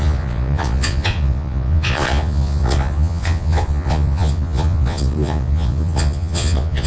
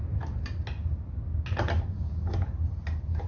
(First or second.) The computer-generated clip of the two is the first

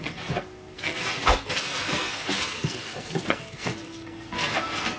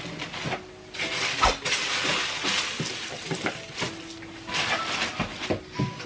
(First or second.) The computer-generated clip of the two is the first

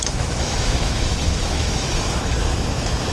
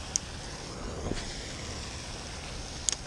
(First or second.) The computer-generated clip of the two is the first